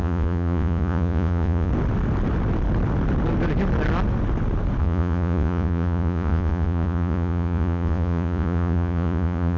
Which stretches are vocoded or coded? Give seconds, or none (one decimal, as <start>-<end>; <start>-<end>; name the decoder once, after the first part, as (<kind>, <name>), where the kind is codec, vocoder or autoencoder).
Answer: 0.0-1.7 (vocoder, Vocos); 4.8-9.6